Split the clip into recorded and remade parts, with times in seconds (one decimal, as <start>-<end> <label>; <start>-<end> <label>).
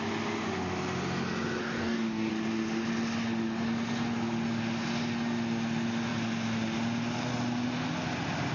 0.0-1.6 recorded; 1.6-2.3 remade; 2.3-8.5 recorded